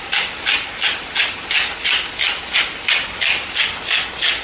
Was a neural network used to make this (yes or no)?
no